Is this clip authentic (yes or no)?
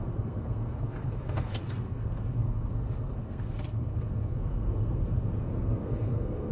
no